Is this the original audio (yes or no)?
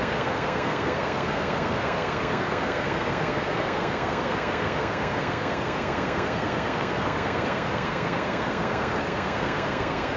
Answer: no